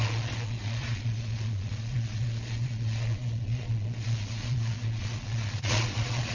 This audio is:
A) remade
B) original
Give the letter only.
A